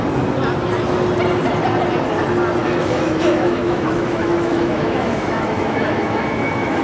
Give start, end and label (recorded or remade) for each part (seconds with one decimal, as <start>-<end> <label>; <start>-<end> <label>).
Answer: 0.0-2.6 recorded; 2.6-6.8 remade